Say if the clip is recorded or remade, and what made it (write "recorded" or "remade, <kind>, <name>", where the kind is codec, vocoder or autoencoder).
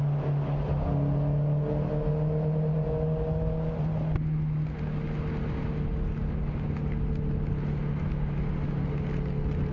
recorded